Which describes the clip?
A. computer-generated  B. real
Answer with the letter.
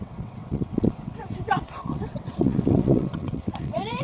A